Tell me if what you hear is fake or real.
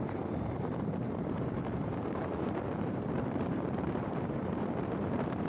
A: fake